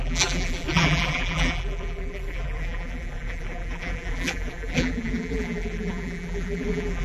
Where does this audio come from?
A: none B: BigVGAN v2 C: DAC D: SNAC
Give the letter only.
B